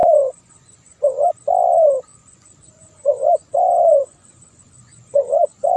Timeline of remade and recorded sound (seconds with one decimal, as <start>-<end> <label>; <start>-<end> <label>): 0.0-1.3 remade; 1.3-2.1 recorded; 2.1-5.8 remade